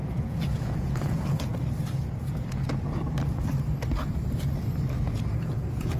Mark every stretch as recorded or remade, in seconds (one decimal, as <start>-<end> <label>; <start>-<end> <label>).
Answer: 0.0-1.5 remade; 1.5-2.0 recorded; 2.0-2.7 remade; 2.7-5.4 recorded; 5.4-6.0 remade